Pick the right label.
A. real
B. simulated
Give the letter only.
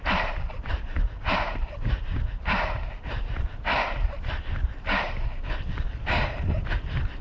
B